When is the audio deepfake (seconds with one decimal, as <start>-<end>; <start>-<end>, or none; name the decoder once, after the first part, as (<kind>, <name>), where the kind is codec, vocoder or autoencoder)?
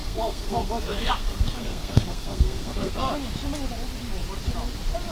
0.0-3.1 (codec, SNAC)